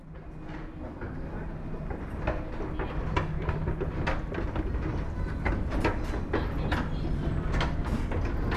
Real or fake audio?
real